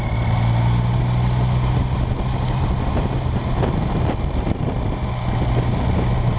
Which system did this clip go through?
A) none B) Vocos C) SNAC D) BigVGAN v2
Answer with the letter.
A